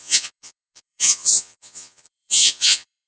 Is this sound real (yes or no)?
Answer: no